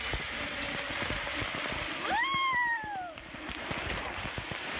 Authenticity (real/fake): real